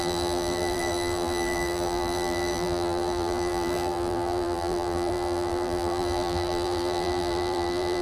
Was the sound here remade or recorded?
remade